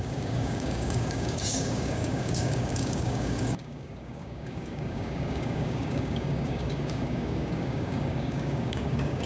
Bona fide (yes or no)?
no